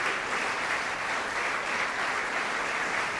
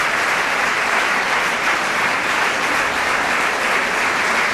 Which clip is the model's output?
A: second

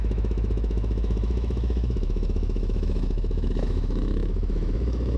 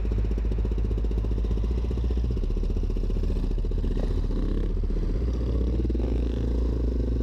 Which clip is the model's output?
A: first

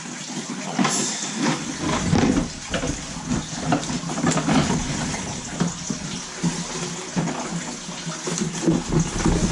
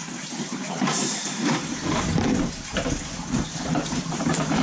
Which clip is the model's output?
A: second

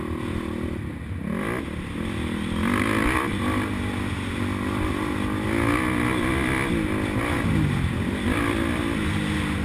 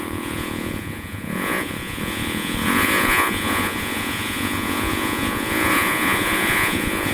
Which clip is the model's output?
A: second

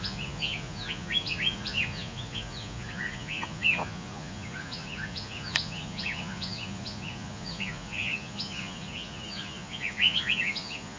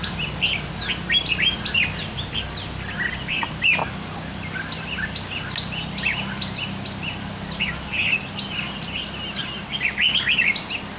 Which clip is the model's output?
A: first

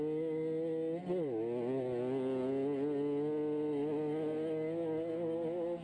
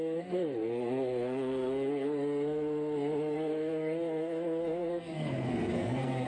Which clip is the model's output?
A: second